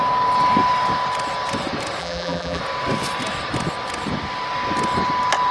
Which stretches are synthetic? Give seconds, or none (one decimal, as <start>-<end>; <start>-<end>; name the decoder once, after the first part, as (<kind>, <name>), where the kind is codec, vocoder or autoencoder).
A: 2.0-2.6 (vocoder, BigVGAN v2)